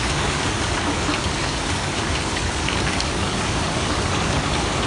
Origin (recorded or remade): remade